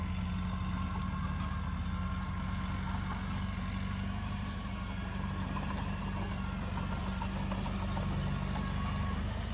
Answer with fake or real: real